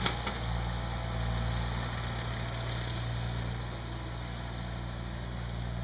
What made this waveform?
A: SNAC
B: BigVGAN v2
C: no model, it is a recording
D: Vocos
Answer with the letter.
C